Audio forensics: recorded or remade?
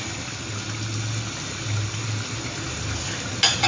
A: recorded